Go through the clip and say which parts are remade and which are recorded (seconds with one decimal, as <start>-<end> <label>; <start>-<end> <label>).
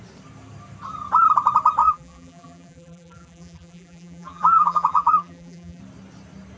0.0-1.8 recorded; 1.8-5.8 remade; 5.8-6.6 recorded